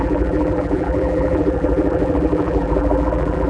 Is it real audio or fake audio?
fake